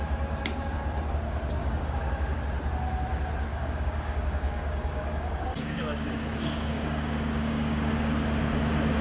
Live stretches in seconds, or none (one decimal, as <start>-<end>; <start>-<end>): 0.0-1.6; 2.4-3.5; 7.9-9.0